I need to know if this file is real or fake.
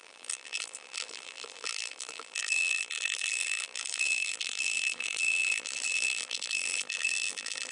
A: fake